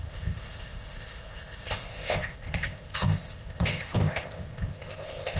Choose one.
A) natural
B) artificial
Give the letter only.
B